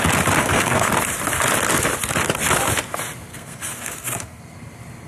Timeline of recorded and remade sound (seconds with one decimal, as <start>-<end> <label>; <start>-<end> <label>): 0.0-0.4 recorded; 0.4-0.9 remade; 0.9-3.3 recorded; 3.3-4.4 remade; 4.4-5.1 recorded